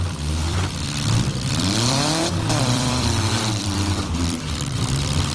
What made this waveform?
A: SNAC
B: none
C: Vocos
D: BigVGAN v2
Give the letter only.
D